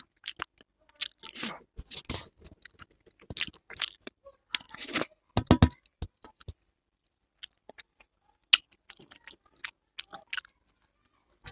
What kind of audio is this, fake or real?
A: real